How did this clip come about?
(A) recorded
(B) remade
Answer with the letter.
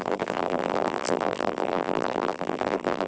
B